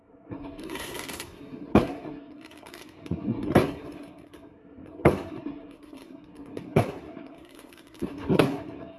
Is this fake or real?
fake